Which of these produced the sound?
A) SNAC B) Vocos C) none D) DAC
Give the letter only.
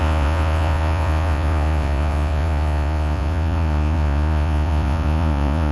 B